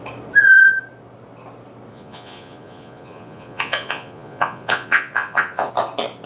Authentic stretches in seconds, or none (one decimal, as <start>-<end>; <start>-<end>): 0.0-1.9; 5.7-6.3